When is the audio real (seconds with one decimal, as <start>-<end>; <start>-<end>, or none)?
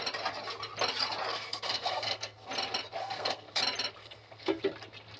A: 0.0-1.3; 2.5-3.0; 3.6-4.0; 4.6-5.2